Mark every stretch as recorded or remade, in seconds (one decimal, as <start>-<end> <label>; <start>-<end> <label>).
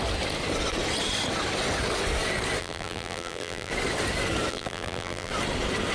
0.0-2.6 recorded; 2.6-3.7 remade; 3.7-4.5 recorded; 4.5-5.3 remade; 5.3-5.9 recorded